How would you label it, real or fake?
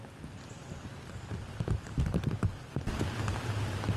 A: real